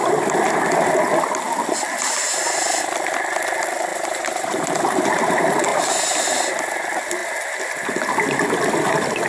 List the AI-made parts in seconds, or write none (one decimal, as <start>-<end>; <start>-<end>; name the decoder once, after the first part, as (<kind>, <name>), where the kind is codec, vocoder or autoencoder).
3.9-4.8 (vocoder, BigVGAN v2); 5.7-6.3